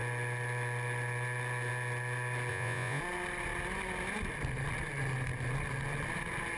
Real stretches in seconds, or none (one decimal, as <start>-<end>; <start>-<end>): 0.0-2.5; 3.0-6.6